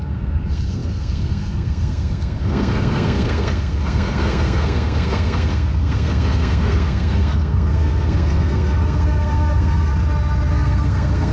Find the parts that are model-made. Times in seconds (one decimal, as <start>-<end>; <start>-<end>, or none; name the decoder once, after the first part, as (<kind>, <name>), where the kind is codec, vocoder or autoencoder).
0.0-9.9 (codec, SNAC); 10.5-11.3